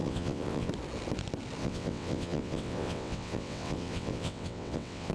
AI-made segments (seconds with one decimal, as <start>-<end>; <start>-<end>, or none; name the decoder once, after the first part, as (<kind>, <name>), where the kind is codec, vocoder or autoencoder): 0.0-0.7 (vocoder, WaveNeXt); 1.6-5.1